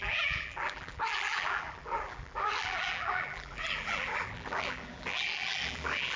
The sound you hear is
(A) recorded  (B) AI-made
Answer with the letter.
B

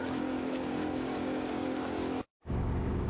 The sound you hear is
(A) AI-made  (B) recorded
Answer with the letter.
A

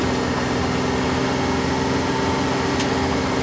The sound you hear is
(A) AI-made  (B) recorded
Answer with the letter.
B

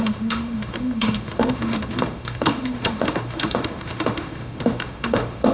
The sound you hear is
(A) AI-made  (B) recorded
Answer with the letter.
A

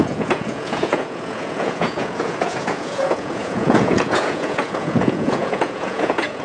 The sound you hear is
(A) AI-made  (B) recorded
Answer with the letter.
A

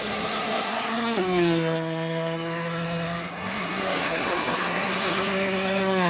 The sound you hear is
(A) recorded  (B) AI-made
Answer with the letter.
B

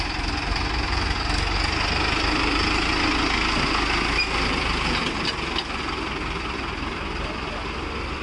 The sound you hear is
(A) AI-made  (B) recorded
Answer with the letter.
B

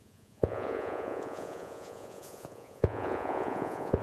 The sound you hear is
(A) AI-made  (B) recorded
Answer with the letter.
A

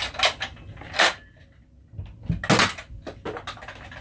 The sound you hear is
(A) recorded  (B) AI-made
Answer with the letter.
A